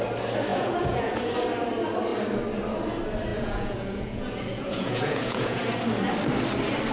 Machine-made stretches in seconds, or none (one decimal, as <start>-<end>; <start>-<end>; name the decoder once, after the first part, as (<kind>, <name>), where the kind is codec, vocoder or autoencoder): 0.5-1.3 (vocoder, Vocos); 3.3-5.6